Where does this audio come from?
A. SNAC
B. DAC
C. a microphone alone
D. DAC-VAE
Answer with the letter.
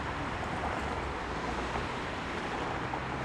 C